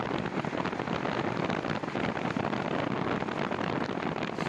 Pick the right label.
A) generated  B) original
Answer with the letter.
B